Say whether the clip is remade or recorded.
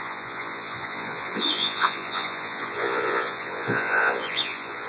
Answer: remade